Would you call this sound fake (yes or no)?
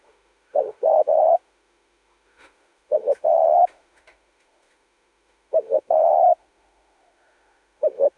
yes